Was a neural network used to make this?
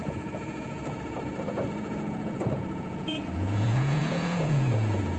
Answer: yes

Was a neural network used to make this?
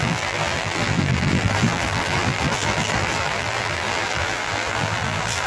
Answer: yes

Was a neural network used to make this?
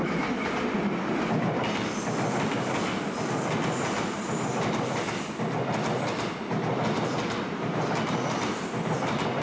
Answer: no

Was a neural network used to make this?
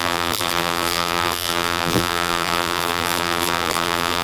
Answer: yes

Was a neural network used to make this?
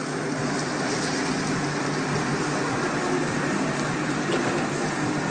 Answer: no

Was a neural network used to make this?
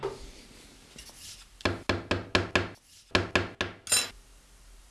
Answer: no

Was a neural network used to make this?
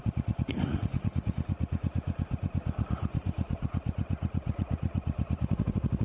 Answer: yes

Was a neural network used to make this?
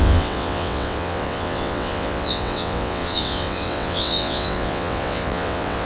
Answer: yes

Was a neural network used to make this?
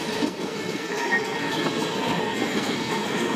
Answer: yes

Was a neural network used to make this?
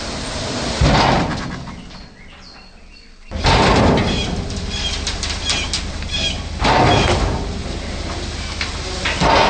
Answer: no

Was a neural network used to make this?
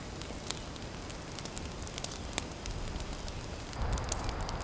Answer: no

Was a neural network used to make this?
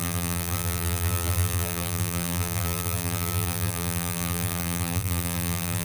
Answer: yes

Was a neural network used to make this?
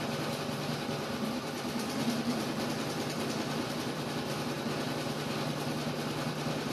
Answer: no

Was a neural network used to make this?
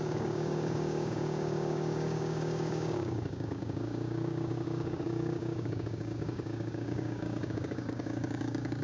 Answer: yes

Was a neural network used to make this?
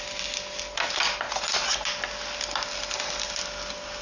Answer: no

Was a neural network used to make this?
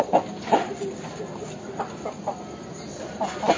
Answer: no